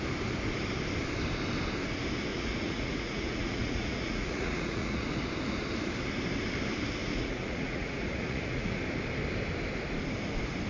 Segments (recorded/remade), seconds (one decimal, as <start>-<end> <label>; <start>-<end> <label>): 0.0-2.3 recorded; 2.3-5.0 remade; 5.0-7.0 recorded; 7.0-8.8 remade; 8.8-10.7 recorded